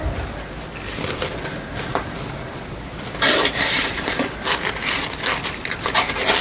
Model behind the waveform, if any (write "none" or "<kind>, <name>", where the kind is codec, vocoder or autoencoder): none